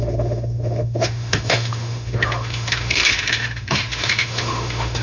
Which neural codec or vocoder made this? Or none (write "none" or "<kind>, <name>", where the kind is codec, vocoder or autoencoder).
autoencoder, DAC-VAE